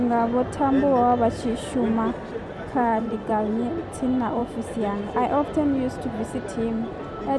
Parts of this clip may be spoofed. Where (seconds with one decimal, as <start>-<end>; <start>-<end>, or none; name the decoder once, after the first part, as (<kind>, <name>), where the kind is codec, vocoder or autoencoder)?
2.6-3.3 (vocoder, Vocos)